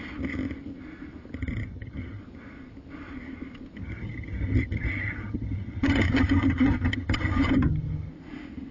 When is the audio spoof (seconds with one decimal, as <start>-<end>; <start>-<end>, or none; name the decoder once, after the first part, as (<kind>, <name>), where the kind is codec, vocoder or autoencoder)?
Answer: 1.4-2.2 (vocoder, HiFi-GAN); 3.8-8.1